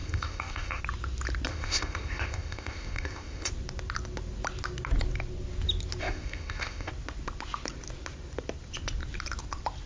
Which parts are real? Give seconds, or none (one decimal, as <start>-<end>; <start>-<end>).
0.8-1.5; 3.5-6.0; 6.9-9.9